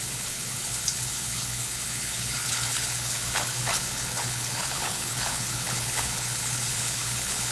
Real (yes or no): no